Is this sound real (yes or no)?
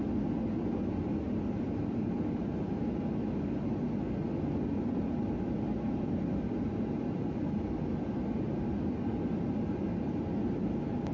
yes